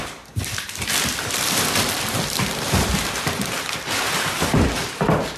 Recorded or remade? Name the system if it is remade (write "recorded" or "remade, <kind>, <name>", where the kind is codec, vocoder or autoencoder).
remade, vocoder, BigVGAN v2